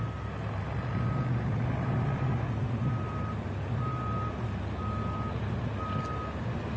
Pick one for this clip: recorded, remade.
recorded